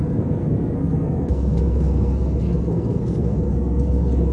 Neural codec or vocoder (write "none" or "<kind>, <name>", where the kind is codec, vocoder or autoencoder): codec, SNAC